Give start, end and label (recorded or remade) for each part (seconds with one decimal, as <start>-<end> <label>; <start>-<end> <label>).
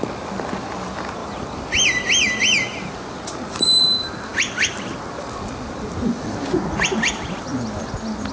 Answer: 0.0-8.3 recorded